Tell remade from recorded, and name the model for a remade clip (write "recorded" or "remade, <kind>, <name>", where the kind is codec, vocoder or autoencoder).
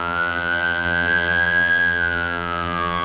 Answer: remade, vocoder, BigVGAN v2